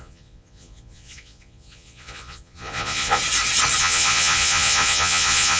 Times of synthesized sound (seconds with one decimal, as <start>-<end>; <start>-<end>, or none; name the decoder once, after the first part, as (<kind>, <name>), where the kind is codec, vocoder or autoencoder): 0.0-3.2 (vocoder, Vocos); 3.8-5.6